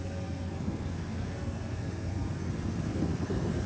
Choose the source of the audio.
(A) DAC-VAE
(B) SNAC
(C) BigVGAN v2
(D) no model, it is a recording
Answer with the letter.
B